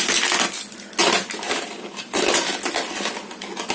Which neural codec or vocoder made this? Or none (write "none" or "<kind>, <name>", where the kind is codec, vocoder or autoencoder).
none